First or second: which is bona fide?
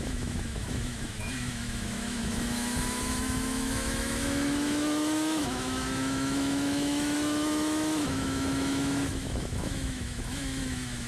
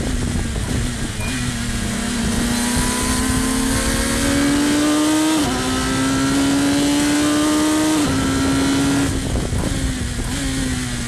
second